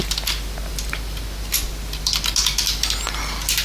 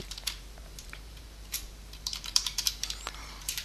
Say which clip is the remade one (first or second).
second